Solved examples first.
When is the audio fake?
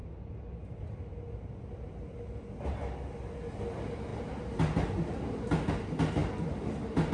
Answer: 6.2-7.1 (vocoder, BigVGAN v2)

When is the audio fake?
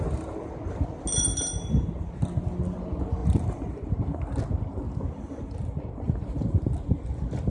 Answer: 3.2-4.0 (vocoder, BigVGAN v2)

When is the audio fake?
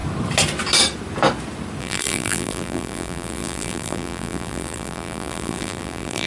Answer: 1.8-6.3 (vocoder, BigVGAN v2)